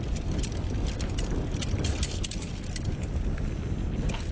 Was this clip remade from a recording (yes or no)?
no